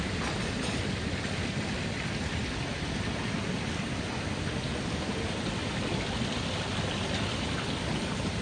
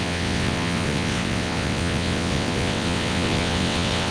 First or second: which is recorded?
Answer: first